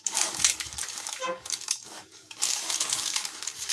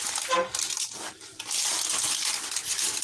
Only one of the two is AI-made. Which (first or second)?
first